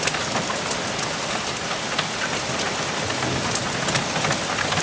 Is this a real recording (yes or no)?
yes